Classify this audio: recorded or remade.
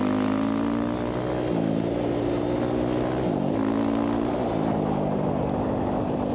recorded